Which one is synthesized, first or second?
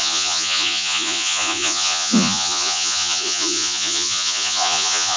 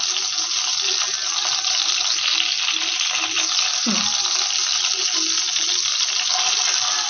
first